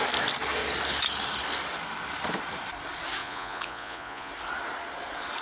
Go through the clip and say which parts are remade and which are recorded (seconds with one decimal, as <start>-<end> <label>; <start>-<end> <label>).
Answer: 0.0-3.2 recorded; 3.2-4.3 remade; 4.3-5.4 recorded